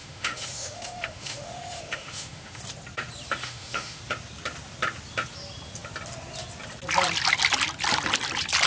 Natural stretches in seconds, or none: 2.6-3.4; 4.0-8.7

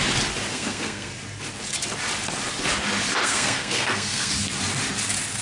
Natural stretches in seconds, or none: 0.0-0.5; 1.1-3.2; 4.3-5.4

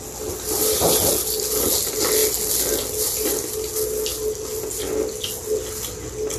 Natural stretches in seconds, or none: 0.0-6.4

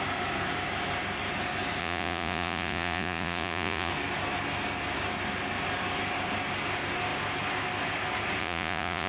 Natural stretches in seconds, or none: 0.0-1.8; 3.9-8.4

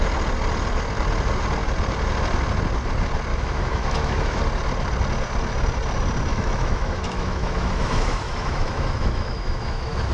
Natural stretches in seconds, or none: 0.0-3.3; 4.4-6.3

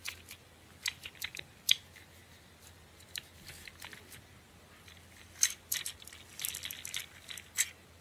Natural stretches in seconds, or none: 0.0-8.0

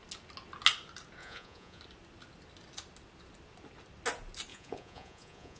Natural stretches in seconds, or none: 0.0-1.2; 1.8-4.5